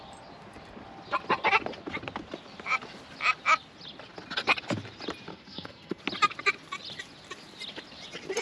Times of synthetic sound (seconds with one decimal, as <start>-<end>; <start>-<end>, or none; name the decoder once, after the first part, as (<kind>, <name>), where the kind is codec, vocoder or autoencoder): 5.3-6.0 (codec, SNAC)